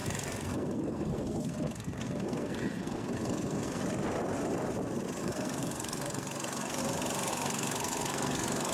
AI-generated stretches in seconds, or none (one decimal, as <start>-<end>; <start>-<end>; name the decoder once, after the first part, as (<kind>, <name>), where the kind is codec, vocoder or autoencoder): 0.0-3.8 (codec, SNAC); 5.2-6.8; 7.3-8.7